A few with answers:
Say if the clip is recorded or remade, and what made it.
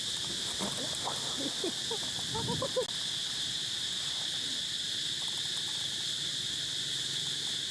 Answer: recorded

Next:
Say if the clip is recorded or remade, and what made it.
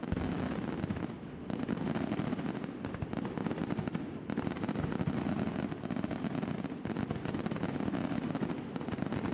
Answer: recorded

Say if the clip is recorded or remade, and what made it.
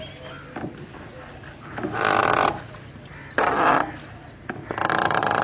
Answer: recorded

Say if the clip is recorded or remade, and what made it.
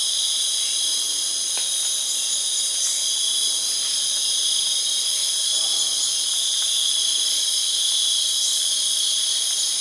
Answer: recorded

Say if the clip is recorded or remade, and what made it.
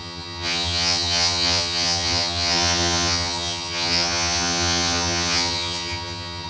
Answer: remade, vocoder, HiFi-GAN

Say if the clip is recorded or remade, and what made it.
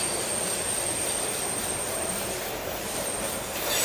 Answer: recorded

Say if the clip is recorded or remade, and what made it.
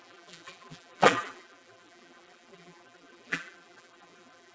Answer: remade, vocoder, BigVGAN v2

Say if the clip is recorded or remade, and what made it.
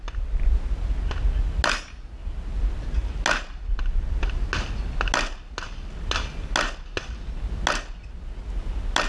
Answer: recorded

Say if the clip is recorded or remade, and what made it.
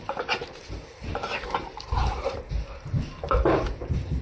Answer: remade, vocoder, BigVGAN v2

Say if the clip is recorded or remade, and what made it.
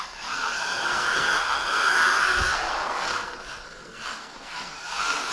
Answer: remade, codec, SNAC